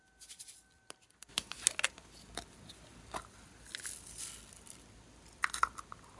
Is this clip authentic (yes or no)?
yes